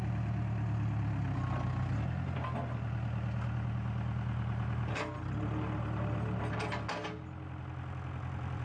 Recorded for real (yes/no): yes